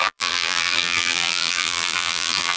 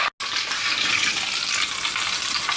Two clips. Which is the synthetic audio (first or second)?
first